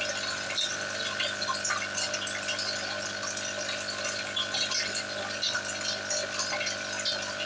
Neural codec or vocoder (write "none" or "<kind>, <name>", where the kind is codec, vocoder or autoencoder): none